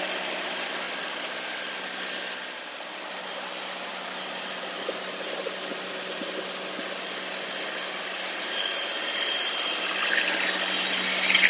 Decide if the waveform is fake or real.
real